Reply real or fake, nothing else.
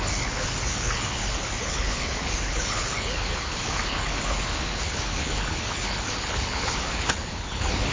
fake